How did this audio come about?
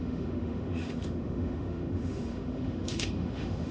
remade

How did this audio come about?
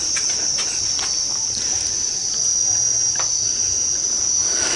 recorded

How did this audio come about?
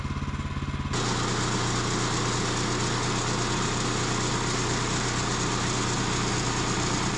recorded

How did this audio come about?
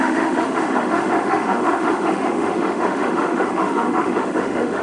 remade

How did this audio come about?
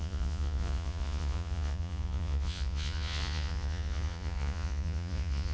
remade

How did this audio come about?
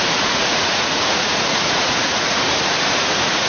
remade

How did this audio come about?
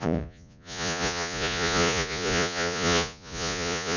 remade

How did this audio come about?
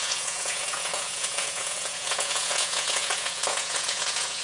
remade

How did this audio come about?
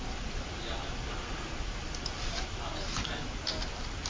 recorded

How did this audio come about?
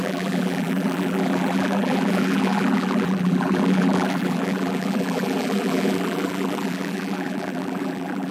remade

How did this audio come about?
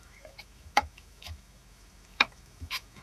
remade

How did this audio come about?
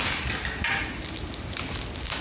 recorded